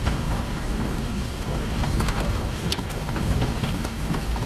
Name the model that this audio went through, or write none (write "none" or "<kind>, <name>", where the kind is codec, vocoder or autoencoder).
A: codec, DAC